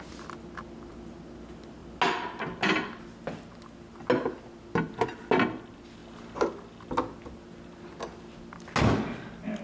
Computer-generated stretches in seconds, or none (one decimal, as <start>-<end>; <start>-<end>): none

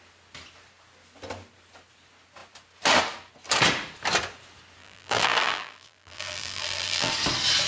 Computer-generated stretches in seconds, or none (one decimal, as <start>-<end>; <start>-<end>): 4.8-7.1

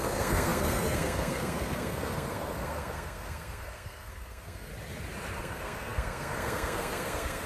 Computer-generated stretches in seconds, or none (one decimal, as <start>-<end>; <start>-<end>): 0.0-4.7; 5.4-7.5

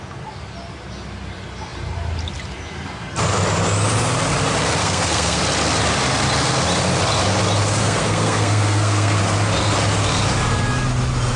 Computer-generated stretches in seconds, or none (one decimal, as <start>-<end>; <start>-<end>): 4.8-5.4; 7.8-9.2

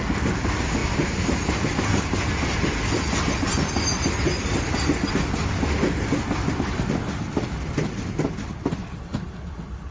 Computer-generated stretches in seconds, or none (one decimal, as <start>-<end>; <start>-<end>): none